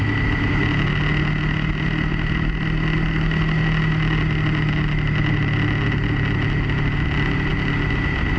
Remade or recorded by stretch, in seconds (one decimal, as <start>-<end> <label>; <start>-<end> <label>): 0.0-8.4 recorded